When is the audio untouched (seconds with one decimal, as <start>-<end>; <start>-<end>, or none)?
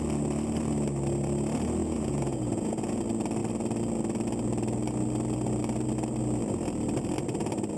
0.0-1.8; 3.0-7.8